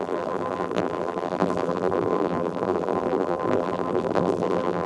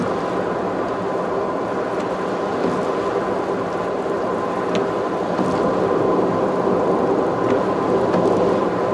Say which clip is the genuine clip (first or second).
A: second